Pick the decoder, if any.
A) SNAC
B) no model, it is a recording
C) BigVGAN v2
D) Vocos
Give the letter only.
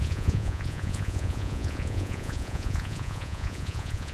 D